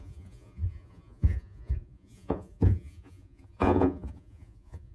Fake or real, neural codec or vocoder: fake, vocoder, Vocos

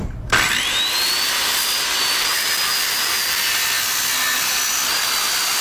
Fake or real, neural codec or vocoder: real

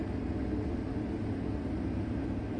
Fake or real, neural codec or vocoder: real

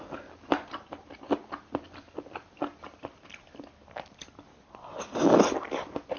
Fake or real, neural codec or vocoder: real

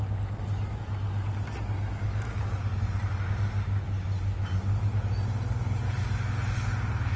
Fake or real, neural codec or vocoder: real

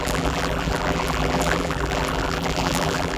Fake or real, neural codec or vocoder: fake, vocoder, BigVGAN v2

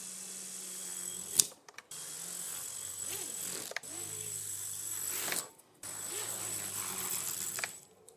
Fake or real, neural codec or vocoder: real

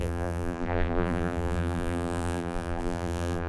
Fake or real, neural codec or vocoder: fake, vocoder, BigVGAN v2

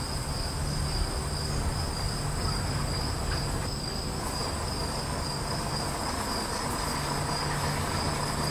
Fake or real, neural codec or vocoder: real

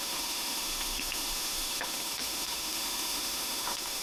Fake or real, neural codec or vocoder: fake, autoencoder, DAC-VAE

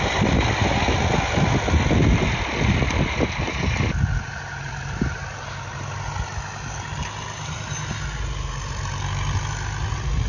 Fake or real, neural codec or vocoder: real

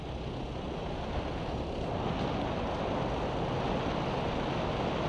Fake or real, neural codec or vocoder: real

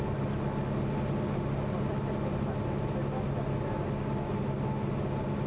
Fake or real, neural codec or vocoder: real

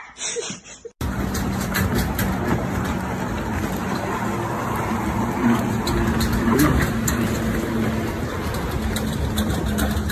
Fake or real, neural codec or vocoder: real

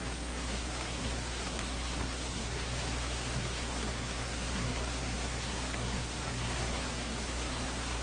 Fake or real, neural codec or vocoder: fake, codec, SNAC